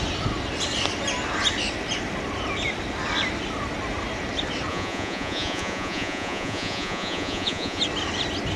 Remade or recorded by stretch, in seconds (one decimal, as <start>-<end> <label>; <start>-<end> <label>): 0.0-4.7 recorded; 4.7-7.8 remade; 7.8-8.6 recorded